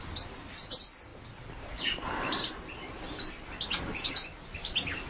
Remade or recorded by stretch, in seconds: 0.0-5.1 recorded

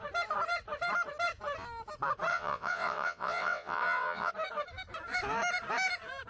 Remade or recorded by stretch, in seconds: 0.0-2.3 recorded; 2.3-4.3 remade; 4.3-6.3 recorded

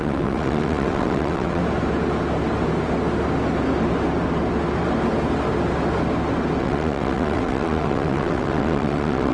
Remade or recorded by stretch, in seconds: 0.0-1.6 remade; 1.6-6.6 recorded; 6.6-9.3 remade

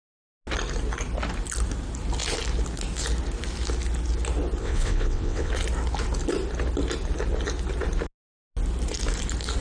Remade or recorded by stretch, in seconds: 0.0-4.6 recorded; 4.6-5.5 remade; 5.5-9.6 recorded